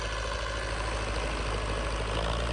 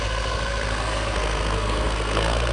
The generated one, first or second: second